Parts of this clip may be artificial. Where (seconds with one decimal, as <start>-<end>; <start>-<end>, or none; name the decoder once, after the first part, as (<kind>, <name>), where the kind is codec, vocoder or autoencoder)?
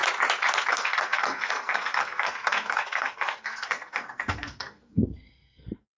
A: 0.7-6.0 (codec, SNAC)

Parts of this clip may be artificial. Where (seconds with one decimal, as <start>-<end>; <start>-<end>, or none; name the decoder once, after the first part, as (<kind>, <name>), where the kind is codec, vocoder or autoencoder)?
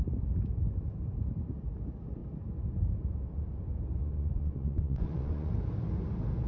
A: 4.0-5.5 (vocoder, Vocos)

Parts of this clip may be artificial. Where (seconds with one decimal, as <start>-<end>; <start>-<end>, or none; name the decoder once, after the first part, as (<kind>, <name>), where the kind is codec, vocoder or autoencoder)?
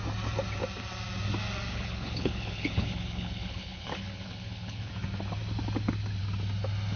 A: 1.7-4.9 (codec, HILCodec)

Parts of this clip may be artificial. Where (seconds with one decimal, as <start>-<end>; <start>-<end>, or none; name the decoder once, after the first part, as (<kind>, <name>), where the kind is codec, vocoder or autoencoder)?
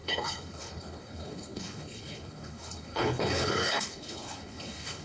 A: 0.0-5.0 (codec, HILCodec)